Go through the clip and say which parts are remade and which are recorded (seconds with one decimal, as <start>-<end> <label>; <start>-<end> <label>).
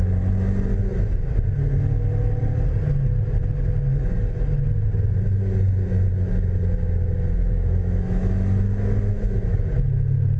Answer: 0.0-7.4 recorded; 7.4-9.6 remade; 9.6-10.4 recorded